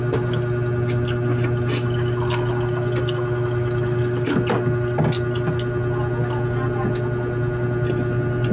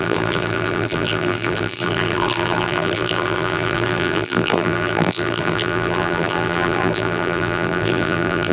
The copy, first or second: second